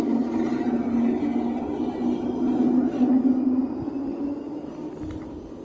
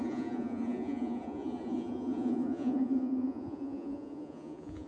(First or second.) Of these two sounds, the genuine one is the first